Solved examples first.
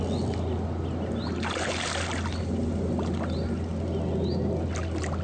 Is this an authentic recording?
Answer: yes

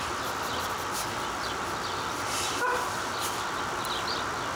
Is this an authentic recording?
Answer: yes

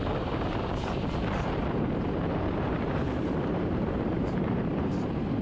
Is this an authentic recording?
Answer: no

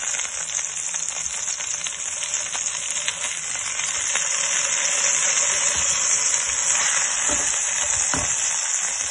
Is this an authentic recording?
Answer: yes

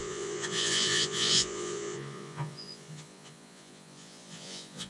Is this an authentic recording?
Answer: no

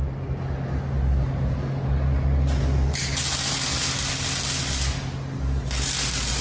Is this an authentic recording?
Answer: yes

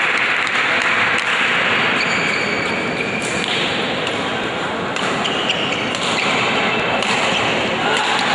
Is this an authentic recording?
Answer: yes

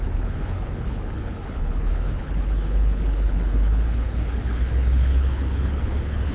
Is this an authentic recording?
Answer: no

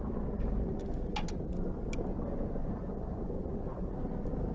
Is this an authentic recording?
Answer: yes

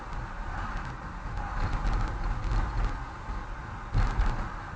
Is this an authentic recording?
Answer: yes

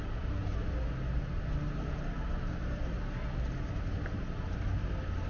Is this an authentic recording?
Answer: yes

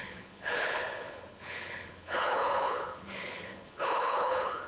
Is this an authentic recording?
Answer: no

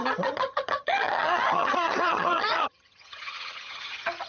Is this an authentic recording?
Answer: no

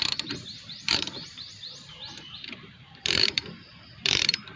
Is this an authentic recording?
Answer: no